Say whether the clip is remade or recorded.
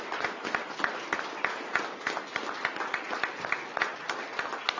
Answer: recorded